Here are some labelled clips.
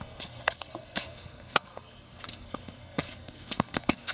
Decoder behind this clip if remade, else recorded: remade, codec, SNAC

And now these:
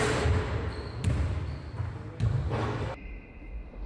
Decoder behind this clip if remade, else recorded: recorded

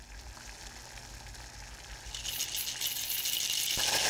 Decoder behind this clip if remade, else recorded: recorded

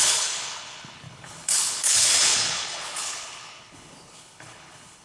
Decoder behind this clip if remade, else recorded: remade, codec, HILCodec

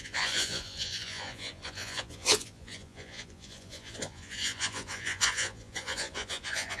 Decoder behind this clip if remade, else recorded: remade, vocoder, Vocos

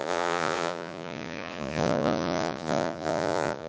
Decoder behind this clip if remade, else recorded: remade, vocoder, Vocos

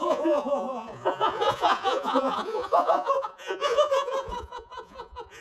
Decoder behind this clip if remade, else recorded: remade, vocoder, Vocos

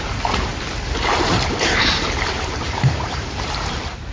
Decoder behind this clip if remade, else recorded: remade, vocoder, BigVGAN v2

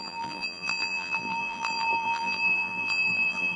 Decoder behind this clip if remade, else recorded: remade, vocoder, BigVGAN v2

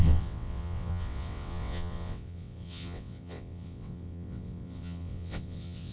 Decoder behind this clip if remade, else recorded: remade, vocoder, WaveNeXt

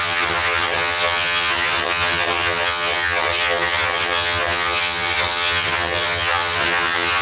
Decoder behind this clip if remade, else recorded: remade, vocoder, HiFi-GAN